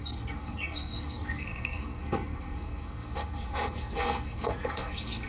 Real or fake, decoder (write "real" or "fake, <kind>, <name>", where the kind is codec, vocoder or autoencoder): fake, codec, SNAC